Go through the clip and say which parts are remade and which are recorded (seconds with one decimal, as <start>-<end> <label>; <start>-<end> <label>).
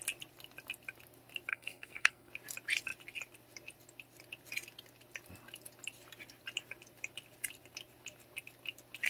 0.0-1.5 recorded; 1.5-2.3 remade; 2.3-9.1 recorded